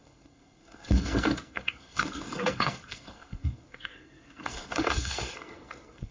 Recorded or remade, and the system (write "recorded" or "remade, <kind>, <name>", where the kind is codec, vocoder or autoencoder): remade, codec, SNAC